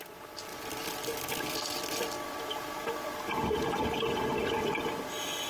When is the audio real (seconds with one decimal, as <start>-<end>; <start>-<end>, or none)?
0.0-0.5; 3.8-5.5

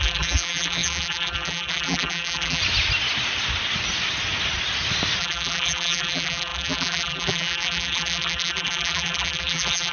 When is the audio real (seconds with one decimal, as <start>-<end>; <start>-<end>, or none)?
2.6-5.2

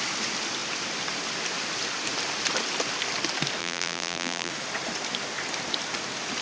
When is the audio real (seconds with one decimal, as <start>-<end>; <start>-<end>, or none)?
0.0-3.6; 4.5-6.4

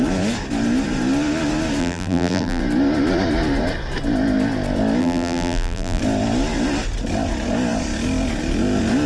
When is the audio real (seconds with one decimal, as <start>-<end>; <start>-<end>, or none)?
0.0-1.8; 2.6-5.0; 6.0-9.1

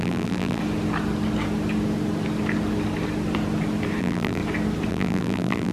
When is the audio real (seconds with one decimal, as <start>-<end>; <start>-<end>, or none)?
0.6-4.0; 4.4-4.9

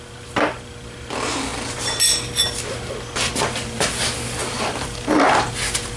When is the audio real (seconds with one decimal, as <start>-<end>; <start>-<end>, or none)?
0.0-4.4; 5.5-6.0

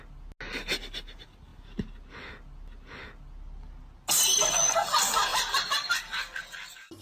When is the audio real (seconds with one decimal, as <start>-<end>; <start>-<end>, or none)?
0.0-5.3

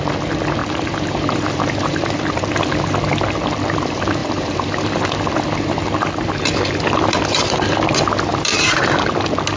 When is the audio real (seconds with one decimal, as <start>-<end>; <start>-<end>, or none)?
0.0-0.6; 2.2-4.2; 5.0-8.3; 8.8-9.6